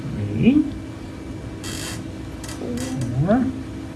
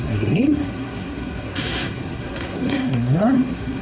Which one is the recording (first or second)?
first